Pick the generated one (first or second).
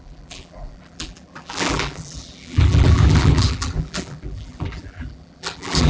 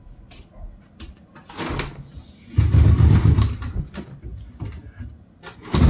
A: first